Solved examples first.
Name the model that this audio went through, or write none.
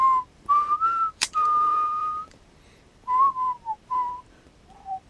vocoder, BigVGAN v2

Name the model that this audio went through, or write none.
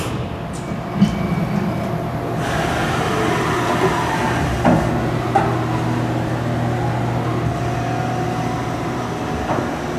none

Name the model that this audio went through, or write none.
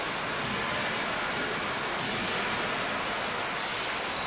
none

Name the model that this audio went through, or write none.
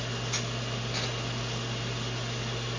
none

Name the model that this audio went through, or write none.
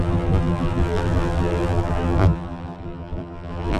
vocoder, BigVGAN v2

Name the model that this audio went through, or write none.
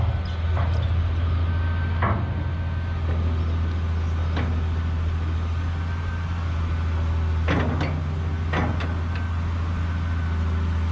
none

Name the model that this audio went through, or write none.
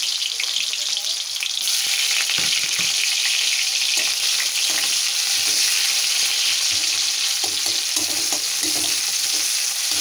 none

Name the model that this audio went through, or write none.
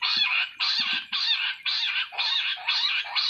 vocoder, BigVGAN v2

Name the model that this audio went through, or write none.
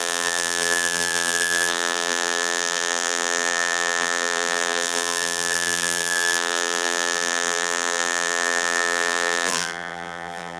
vocoder, BigVGAN v2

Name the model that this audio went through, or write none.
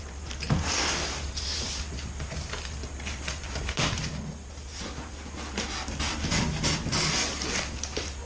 none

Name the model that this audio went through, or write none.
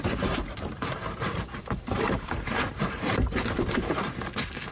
vocoder, BigVGAN v2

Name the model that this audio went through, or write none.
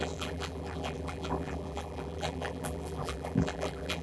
vocoder, BigVGAN v2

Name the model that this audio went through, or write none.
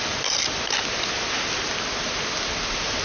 none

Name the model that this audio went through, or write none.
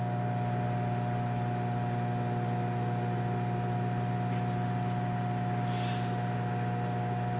none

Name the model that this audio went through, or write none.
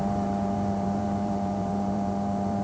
vocoder, BigVGAN v2